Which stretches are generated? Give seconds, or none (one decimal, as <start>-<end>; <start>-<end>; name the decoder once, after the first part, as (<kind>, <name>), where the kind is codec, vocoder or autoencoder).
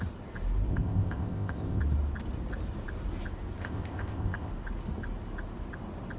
0.7-1.8 (codec, ZipCodec); 3.6-4.5